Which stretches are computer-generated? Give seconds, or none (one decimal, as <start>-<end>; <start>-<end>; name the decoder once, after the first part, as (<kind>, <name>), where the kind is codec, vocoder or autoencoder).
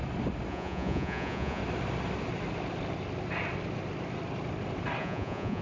0.5-1.6 (vocoder, Vocos); 5.0-5.6